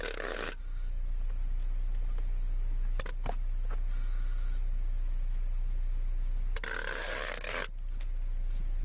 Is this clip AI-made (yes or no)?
no